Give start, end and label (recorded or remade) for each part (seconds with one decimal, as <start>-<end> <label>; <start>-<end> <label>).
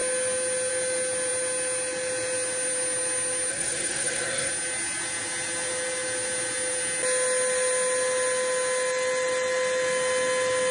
0.0-3.5 recorded; 3.5-4.5 remade; 4.5-10.7 recorded